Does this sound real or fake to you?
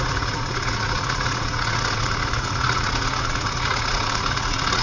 fake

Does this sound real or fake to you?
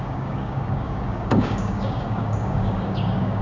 fake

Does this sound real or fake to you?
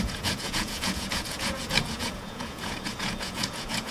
fake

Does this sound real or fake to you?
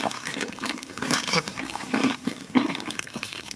fake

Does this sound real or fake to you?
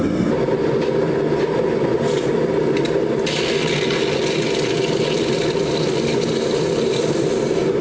real